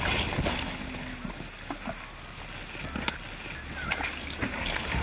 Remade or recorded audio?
recorded